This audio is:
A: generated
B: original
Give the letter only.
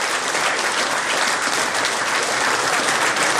A